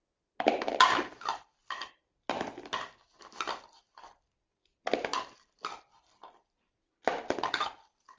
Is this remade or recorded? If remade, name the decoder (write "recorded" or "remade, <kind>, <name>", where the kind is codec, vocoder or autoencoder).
recorded